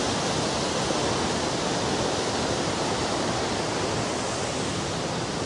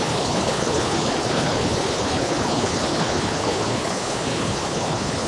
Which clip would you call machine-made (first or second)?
second